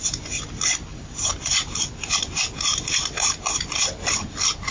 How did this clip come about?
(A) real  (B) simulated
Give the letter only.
A